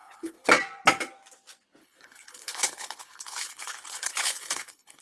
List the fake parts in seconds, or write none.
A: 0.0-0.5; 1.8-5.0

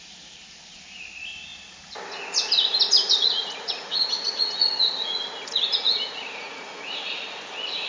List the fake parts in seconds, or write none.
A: 3.0-7.4

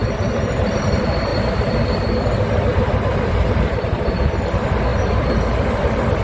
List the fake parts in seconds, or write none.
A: 0.0-0.7; 2.7-4.4; 4.9-5.8

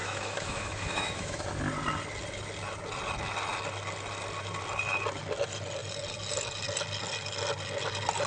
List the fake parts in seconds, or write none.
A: 0.0-1.5

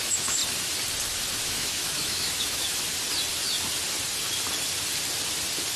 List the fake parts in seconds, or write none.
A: 0.0-0.4; 1.4-2.9

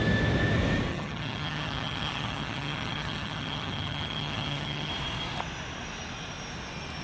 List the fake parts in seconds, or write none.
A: 0.9-4.9

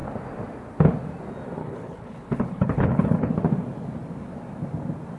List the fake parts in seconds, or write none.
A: 1.6-3.3